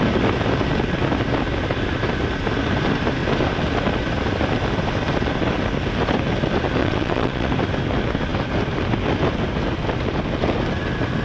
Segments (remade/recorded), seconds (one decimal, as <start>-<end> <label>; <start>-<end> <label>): 0.0-6.8 recorded; 6.8-7.5 remade; 7.5-11.2 recorded

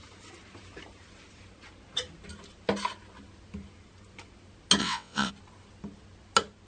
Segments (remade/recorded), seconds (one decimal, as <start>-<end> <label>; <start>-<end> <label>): 0.0-4.8 recorded; 4.8-5.3 remade; 5.3-6.7 recorded

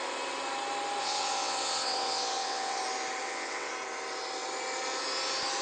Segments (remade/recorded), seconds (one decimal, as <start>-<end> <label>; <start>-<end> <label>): 0.0-1.0 recorded; 1.0-2.8 remade; 2.8-3.2 recorded; 3.2-3.7 remade; 3.7-5.6 recorded

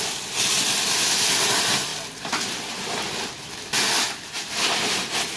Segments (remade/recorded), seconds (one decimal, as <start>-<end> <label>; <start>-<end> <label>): 0.0-5.4 recorded

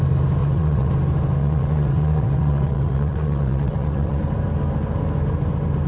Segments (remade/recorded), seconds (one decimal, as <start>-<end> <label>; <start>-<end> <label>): 0.0-0.4 recorded; 0.4-0.9 remade; 0.9-1.4 recorded; 1.4-4.2 remade; 4.2-5.9 recorded